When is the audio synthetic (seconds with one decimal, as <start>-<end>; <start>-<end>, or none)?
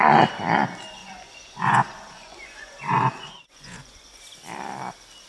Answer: 1.0-4.2